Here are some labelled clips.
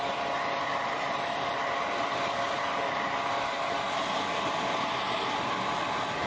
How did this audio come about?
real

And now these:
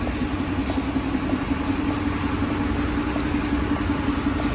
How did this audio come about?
real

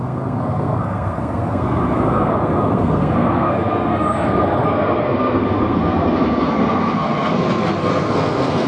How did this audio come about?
fake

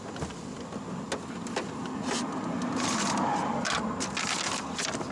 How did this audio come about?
real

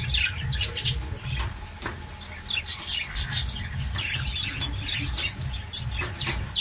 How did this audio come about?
real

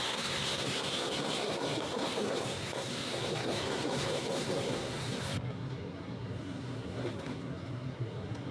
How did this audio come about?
fake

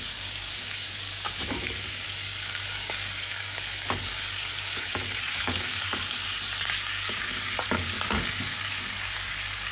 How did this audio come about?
fake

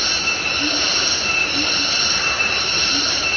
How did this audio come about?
real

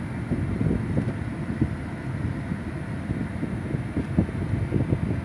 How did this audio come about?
real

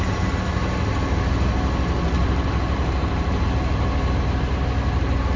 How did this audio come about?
real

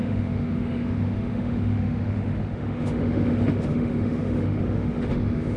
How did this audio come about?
fake